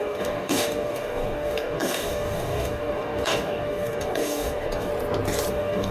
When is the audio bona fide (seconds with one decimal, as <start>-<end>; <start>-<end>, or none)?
4.9-5.5